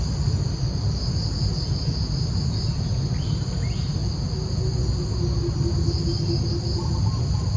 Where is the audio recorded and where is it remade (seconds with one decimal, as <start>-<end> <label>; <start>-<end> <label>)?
0.0-7.6 recorded